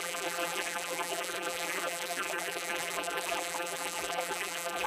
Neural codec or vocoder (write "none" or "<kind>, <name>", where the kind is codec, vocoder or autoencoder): vocoder, BigVGAN v2